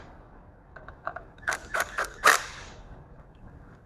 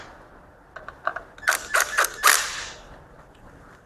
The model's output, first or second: first